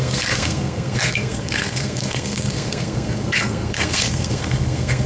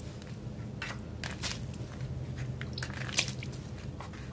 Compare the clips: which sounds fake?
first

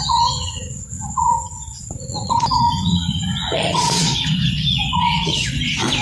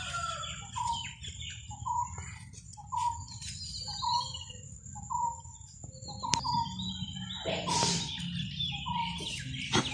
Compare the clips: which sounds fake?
first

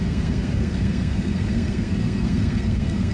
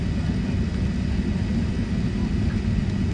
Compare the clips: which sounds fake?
first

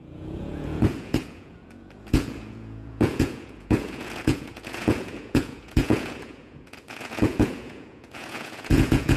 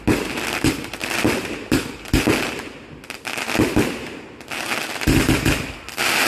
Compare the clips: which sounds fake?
first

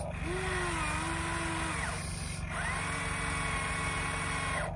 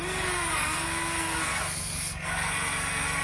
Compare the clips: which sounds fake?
second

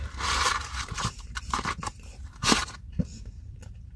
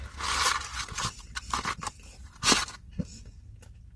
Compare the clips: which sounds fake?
first